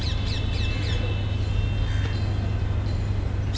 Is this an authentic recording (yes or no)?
yes